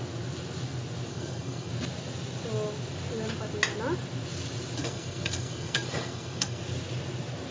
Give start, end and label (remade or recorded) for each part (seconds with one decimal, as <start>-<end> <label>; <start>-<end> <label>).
0.0-1.1 recorded; 1.1-1.7 remade; 1.7-4.8 recorded; 4.8-6.6 remade; 6.6-7.5 recorded